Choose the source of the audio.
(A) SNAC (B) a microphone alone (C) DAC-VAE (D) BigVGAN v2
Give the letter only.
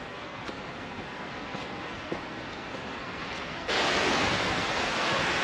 A